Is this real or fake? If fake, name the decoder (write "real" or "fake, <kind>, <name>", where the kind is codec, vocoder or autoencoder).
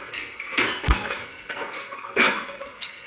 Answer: fake, codec, SNAC